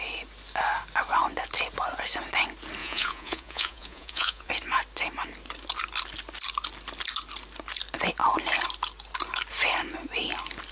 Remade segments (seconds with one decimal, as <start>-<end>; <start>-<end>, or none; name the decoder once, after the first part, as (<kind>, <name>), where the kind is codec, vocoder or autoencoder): 2.8-4.5 (vocoder, Vocos)